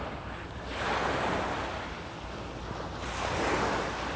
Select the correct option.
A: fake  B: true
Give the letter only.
B